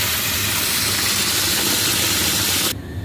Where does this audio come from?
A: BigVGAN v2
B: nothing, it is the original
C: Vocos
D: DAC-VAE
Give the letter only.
B